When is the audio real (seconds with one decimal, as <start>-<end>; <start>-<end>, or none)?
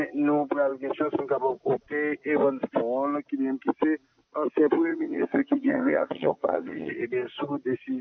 0.0-4.9; 6.9-8.0